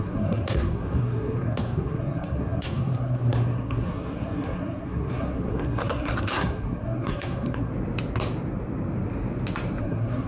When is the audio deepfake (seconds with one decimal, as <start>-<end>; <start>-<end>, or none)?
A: 0.0-7.7; 9.8-10.3